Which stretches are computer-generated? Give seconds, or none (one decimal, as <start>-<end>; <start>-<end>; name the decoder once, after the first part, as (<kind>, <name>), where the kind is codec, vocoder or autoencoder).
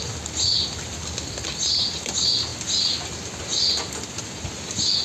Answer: none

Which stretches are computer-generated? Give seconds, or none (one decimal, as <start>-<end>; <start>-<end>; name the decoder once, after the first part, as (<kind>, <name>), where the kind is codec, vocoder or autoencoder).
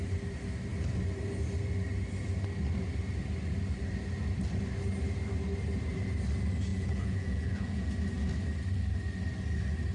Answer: 6.7-7.9 (vocoder, Vocos)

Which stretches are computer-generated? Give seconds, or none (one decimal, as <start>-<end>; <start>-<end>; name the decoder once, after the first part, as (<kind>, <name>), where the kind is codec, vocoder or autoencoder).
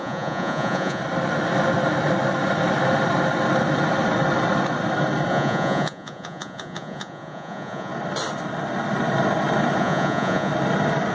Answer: 0.0-1.0 (vocoder, Vocos); 5.3-7.9; 9.8-10.5